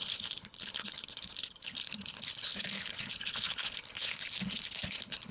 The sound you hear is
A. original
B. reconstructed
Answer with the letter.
B